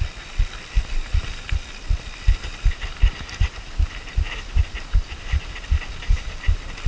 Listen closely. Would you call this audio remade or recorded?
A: recorded